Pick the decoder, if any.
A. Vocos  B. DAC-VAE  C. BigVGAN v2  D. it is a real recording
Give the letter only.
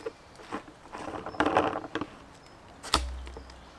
D